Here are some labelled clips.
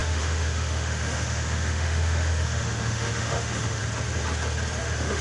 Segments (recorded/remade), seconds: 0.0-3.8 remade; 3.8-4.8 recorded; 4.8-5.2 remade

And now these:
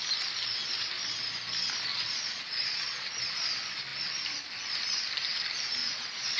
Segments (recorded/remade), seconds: 0.0-1.9 recorded; 1.9-3.2 remade; 3.2-5.8 recorded; 5.8-6.4 remade

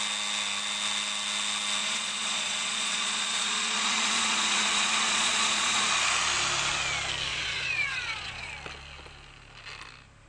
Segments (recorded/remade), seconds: 0.0-1.8 recorded; 1.8-5.9 remade; 5.9-7.3 recorded; 7.3-8.5 remade; 8.5-10.3 recorded

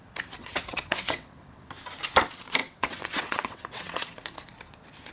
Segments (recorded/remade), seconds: 0.0-0.4 recorded; 0.4-1.7 remade; 1.7-2.6 recorded; 2.6-4.1 remade; 4.1-5.1 recorded